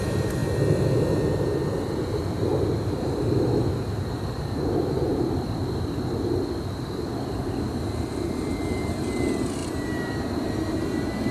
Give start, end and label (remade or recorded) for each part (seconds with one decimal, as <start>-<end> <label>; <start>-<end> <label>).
0.0-0.4 remade; 0.4-2.1 recorded; 2.1-2.5 remade; 2.5-3.8 recorded; 3.8-5.6 remade; 5.6-7.4 recorded; 7.4-11.3 remade